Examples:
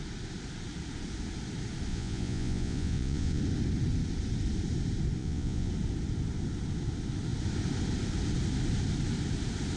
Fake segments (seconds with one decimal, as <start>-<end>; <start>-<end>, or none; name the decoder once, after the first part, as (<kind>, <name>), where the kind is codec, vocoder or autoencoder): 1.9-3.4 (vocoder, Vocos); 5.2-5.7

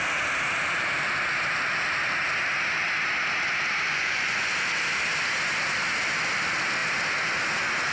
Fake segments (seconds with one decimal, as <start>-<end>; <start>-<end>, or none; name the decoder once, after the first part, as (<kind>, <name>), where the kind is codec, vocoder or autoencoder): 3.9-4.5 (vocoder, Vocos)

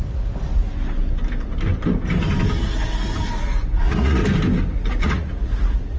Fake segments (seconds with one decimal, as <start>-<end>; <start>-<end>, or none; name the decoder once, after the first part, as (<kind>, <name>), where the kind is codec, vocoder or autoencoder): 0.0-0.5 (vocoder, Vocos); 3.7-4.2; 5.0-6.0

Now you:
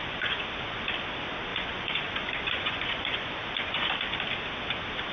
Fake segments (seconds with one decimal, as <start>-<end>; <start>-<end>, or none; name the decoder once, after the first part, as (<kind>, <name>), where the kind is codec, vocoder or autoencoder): 0.0-0.9 (vocoder, Vocos); 1.5-3.9

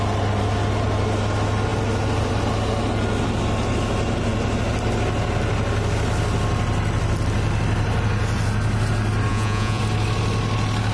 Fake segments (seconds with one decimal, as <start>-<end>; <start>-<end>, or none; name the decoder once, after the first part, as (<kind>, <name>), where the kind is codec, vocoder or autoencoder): 9.3-9.8 (vocoder, Vocos)

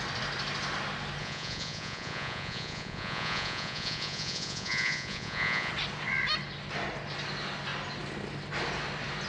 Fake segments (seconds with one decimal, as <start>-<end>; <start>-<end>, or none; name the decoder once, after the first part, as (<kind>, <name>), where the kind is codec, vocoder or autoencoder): 1.2-5.7 (vocoder, Vocos)